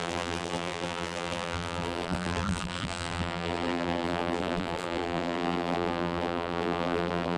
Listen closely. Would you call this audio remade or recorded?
remade